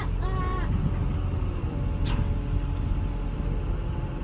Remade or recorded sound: recorded